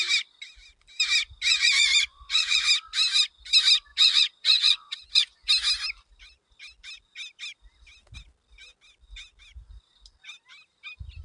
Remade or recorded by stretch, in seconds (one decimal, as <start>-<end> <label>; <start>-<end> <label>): 0.0-1.5 recorded; 1.5-2.7 remade; 2.7-3.9 recorded; 3.9-5.5 remade; 5.5-11.2 recorded